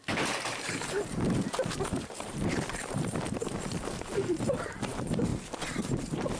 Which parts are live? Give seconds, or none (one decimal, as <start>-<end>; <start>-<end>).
5.3-5.8